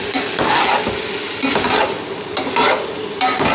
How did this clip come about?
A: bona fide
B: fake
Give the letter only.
A